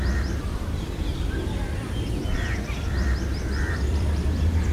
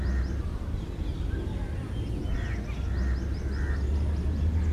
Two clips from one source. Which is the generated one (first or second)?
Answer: first